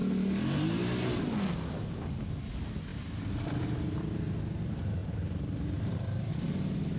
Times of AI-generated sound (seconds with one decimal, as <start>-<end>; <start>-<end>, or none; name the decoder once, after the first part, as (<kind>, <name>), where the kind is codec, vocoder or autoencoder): 2.9-4.4 (vocoder, BigVGAN v2); 5.0-6.3